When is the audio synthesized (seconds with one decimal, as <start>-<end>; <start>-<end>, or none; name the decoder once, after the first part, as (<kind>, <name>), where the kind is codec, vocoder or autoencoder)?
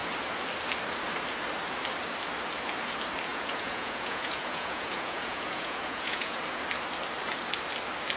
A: 3.3-6.4 (vocoder, Vocos)